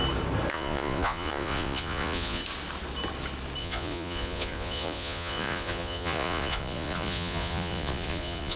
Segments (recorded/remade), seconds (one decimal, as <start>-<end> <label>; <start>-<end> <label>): 0.0-0.5 recorded; 0.5-2.4 remade; 2.4-3.6 recorded; 3.6-8.6 remade